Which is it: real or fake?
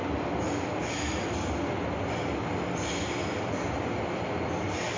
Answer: real